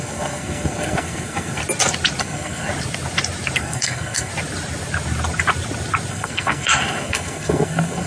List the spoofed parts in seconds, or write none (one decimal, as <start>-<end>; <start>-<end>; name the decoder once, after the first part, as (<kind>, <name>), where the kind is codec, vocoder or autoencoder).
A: 0.0-1.6 (codec, SNAC); 2.2-2.7; 3.6-4.3; 6.1-8.1